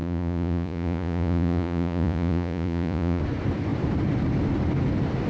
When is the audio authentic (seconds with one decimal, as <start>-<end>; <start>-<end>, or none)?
3.2-5.3